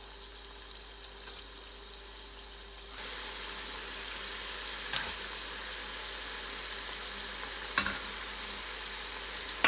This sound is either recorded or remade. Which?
recorded